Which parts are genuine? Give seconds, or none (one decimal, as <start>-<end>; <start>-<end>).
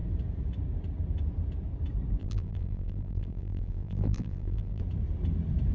0.0-2.2; 4.8-5.7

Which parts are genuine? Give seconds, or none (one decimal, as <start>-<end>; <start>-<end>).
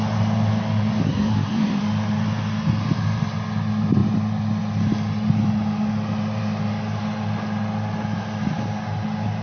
0.0-1.0; 1.8-9.4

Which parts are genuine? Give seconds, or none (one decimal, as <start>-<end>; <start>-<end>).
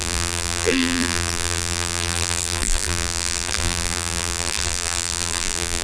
none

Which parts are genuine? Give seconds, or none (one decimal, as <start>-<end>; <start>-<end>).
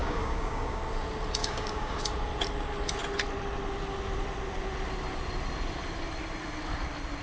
0.8-1.4; 2.0-7.2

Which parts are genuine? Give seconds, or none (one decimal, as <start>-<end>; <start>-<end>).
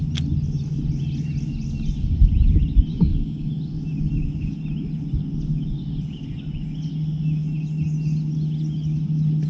0.0-2.9; 3.5-9.5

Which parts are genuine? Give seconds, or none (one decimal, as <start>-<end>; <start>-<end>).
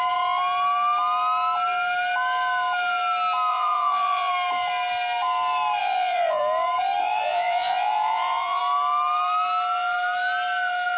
0.0-3.5; 4.3-5.8; 6.4-7.0; 8.6-11.0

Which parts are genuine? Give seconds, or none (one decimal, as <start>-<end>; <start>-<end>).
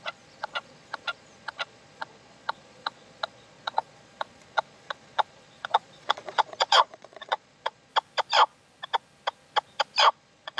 7.9-10.1